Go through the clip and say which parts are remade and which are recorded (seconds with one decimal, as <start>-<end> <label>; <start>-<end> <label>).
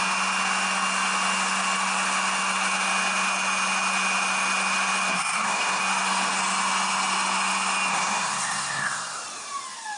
0.0-5.1 recorded; 5.1-5.8 remade; 5.8-7.9 recorded; 7.9-9.2 remade; 9.2-10.0 recorded